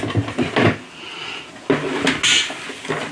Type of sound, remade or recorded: recorded